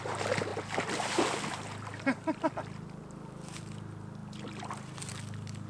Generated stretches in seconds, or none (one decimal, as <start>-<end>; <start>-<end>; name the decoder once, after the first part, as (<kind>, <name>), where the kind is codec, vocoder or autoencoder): none